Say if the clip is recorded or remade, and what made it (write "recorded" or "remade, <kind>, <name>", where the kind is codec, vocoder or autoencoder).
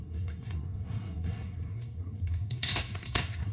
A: remade, codec, SNAC